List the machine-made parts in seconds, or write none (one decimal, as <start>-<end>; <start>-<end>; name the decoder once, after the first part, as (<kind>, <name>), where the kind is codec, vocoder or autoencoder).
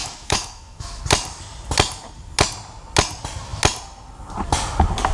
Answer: 0.0-1.0 (autoencoder, DAC-VAE)